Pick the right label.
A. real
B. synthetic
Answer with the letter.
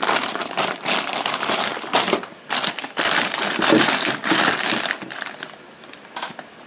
A